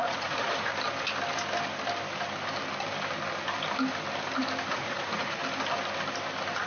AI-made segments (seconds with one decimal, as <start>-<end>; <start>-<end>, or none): 0.0-0.7; 4.7-5.4

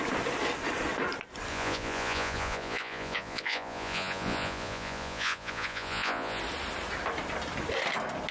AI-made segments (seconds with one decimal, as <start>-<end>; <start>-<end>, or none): 1.5-6.4

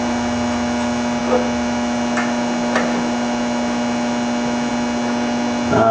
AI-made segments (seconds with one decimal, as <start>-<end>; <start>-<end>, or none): none

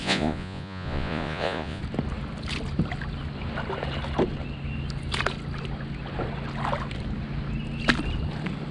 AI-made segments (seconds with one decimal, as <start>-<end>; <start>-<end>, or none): 0.0-1.8